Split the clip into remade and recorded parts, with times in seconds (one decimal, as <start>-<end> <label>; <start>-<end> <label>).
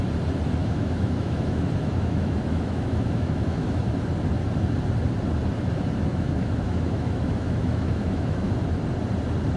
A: 0.0-0.6 recorded; 0.6-3.9 remade; 3.9-6.1 recorded; 6.1-8.5 remade; 8.5-9.6 recorded